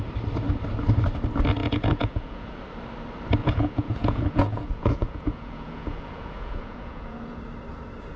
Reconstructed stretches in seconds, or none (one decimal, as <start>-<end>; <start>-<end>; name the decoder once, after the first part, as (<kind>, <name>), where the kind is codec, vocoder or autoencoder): 1.6-2.6 (vocoder, Vocos); 3.4-7.4